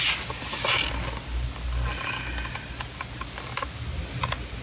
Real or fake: real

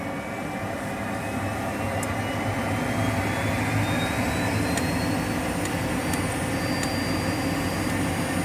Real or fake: real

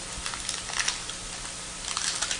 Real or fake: real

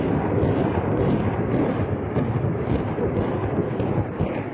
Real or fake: real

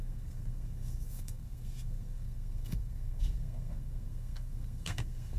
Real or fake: fake